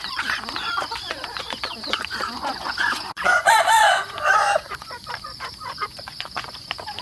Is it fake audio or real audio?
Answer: fake